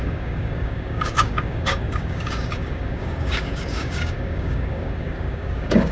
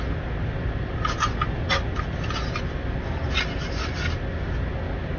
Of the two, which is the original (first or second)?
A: second